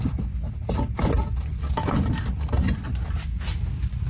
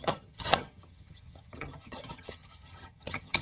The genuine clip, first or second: first